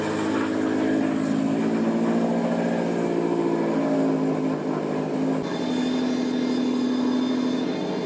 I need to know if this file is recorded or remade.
recorded